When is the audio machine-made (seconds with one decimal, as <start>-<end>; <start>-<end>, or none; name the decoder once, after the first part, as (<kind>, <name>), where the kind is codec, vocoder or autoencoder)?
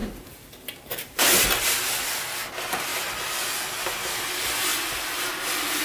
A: 0.0-1.5 (vocoder, BigVGAN v2)